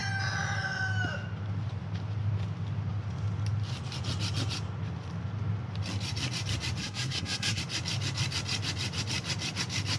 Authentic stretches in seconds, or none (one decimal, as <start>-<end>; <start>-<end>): 0.0-6.8; 7.6-10.0